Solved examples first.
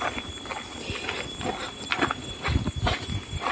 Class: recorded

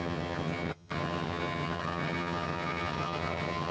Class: remade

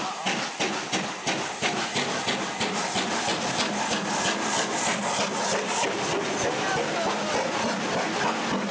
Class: recorded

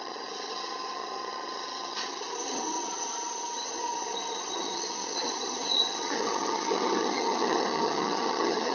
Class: remade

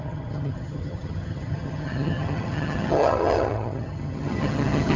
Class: remade